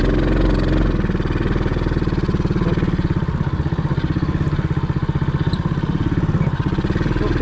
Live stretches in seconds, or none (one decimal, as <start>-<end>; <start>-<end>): 0.0-7.4